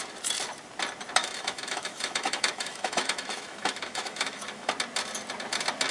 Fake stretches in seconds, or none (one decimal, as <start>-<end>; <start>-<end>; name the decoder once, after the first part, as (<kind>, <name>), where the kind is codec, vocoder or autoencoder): 1.2-4.7 (autoencoder, DAC-VAE)